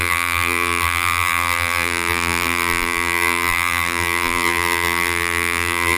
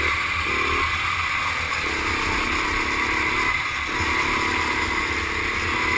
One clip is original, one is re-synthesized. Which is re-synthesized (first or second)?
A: first